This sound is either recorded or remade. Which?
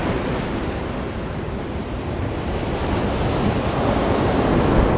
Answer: recorded